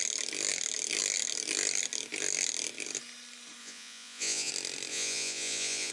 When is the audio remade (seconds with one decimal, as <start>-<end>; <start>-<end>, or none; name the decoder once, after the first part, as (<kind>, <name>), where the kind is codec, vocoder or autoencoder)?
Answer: 3.6-4.5 (vocoder, Vocos); 4.9-5.9